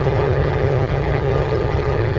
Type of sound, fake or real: fake